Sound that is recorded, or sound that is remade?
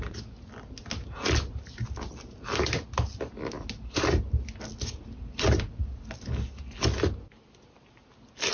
recorded